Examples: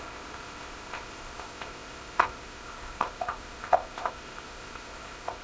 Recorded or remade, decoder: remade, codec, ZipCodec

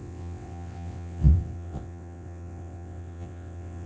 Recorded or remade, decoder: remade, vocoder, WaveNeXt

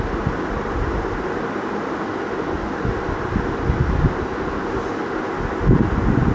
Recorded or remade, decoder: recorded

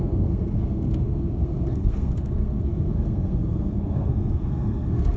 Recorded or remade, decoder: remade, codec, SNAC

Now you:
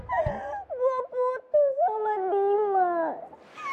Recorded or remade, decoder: recorded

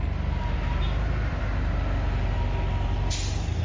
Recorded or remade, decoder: recorded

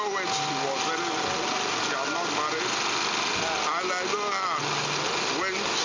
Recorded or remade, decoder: recorded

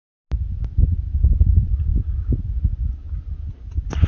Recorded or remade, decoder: recorded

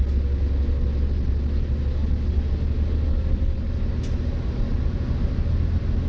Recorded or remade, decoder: recorded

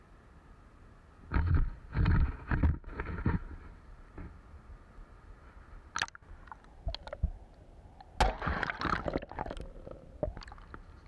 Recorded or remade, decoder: recorded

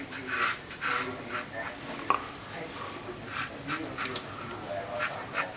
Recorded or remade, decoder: recorded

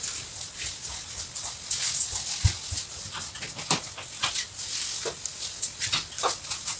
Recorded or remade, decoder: recorded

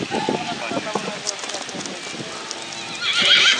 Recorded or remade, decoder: recorded